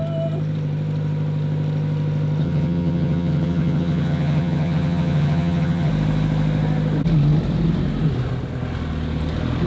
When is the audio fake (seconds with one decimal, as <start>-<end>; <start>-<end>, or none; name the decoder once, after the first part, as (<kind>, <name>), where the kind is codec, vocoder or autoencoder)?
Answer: 2.4-5.9 (vocoder, HiFi-GAN)